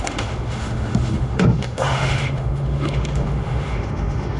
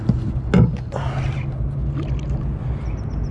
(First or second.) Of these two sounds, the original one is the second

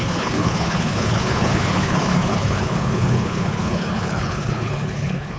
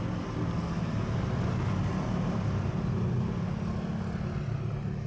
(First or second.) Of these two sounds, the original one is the second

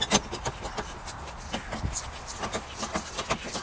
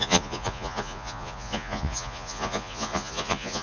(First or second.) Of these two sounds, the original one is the first